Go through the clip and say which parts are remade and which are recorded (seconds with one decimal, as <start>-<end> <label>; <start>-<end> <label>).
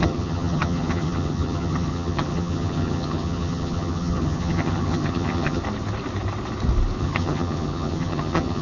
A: 0.0-5.6 remade; 5.6-7.0 recorded; 7.0-8.6 remade